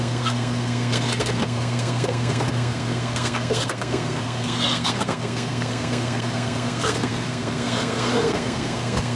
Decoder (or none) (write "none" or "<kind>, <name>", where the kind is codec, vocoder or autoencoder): codec, SNAC